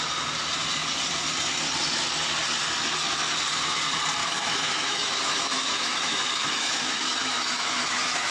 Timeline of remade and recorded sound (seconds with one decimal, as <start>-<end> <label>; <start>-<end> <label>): 0.0-4.2 recorded; 4.2-8.3 remade

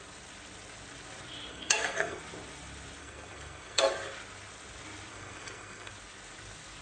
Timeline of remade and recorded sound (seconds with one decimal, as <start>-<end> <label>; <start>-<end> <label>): 0.0-1.5 recorded; 1.5-2.2 remade; 2.2-3.0 recorded; 3.0-3.9 remade; 3.9-5.1 recorded; 5.1-5.9 remade; 5.9-6.8 recorded

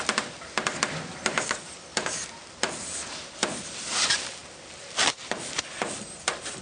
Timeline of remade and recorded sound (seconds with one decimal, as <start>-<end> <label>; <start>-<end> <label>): 0.0-6.6 remade

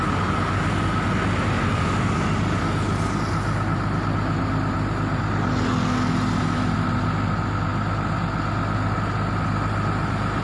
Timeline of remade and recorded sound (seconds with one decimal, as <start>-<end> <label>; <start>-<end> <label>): 0.0-10.4 recorded

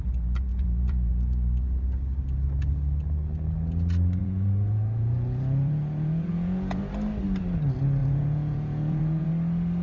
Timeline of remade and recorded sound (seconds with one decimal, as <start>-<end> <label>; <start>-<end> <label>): 0.0-0.5 recorded; 0.5-1.1 remade; 1.1-4.2 recorded; 4.2-6.8 remade; 6.8-8.0 recorded; 8.0-9.3 remade; 9.3-9.8 recorded

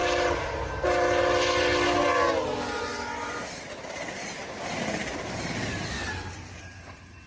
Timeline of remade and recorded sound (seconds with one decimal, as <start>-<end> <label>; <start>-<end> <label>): 0.0-7.3 recorded

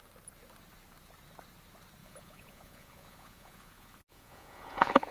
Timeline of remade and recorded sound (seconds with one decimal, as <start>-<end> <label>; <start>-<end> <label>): 0.0-2.0 recorded; 2.0-5.1 remade

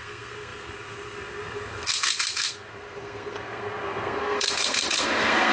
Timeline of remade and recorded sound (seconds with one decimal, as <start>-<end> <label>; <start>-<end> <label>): 0.0-5.5 remade